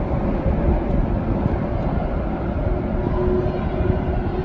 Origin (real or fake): real